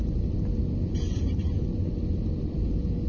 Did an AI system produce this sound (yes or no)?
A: no